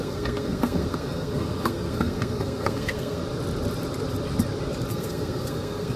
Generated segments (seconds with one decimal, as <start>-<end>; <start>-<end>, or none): 0.0-3.2; 4.9-6.0